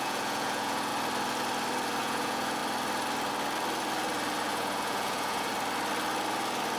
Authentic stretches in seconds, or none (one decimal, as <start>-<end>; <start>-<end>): 0.9-2.0; 2.6-4.5; 5.5-6.8